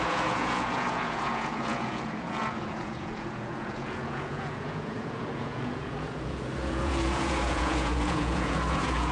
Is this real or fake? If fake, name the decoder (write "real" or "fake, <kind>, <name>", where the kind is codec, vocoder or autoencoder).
fake, vocoder, Vocos